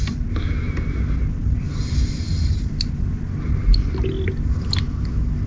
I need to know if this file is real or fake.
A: real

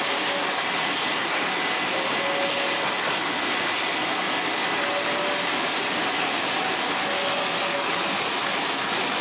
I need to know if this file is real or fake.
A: real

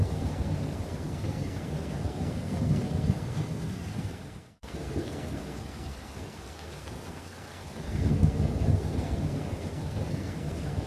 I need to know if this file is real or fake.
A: fake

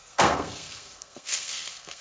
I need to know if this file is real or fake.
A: fake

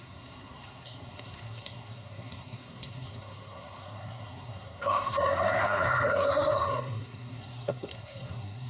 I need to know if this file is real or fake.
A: fake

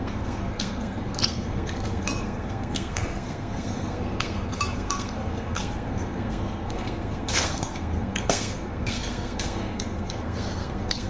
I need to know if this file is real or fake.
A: fake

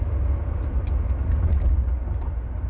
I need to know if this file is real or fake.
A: real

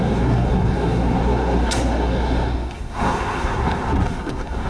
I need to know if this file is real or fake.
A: fake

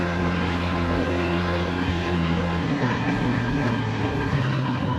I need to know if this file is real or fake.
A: fake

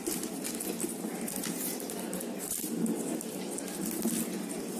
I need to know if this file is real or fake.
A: real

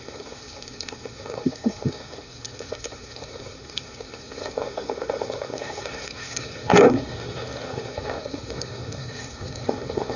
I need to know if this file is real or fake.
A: fake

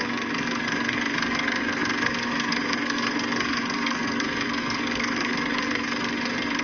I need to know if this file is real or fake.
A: fake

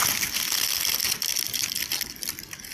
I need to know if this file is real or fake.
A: real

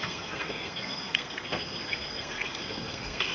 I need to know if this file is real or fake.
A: fake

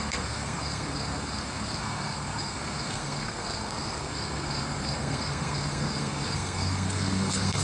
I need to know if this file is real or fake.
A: fake